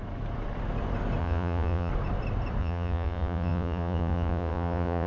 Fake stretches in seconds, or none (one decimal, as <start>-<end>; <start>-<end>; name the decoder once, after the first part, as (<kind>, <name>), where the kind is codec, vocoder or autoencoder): 1.2-1.9 (vocoder, Vocos); 2.6-5.1